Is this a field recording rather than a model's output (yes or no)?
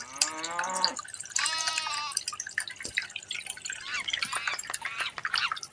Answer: yes